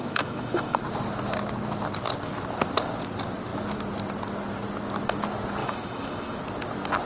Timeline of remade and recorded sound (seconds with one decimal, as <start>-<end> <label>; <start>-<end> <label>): 0.0-0.8 remade; 0.8-5.6 recorded; 5.6-6.4 remade; 6.4-7.1 recorded